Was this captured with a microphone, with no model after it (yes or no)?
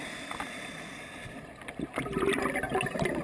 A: yes